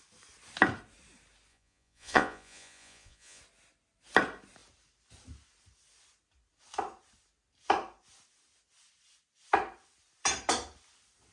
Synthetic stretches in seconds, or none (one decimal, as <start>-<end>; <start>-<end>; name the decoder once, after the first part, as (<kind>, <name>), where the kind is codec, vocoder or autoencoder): 1.5-3.4 (vocoder, Vocos)